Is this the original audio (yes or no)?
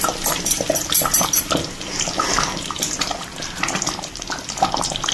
yes